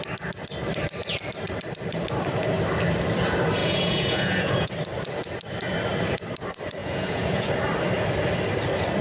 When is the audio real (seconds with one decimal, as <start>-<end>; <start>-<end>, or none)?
0.0-3.6; 4.7-6.8; 7.5-9.0